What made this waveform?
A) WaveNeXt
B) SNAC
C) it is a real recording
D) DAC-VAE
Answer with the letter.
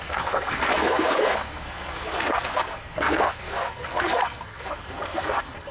B